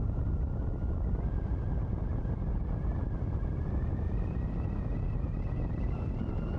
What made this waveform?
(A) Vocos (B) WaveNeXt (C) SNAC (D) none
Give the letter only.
D